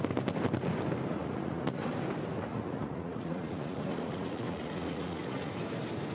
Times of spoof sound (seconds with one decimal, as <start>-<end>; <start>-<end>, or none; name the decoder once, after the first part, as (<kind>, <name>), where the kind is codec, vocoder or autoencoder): 1.1-1.9 (vocoder, Vocos); 2.5-5.5